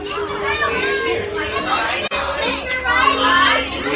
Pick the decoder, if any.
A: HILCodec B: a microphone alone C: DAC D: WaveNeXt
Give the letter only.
B